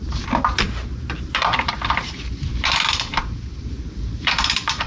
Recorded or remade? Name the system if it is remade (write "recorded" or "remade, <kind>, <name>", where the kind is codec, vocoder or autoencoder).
remade, vocoder, BigVGAN v2